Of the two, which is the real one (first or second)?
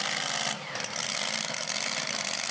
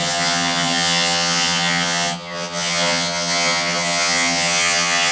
first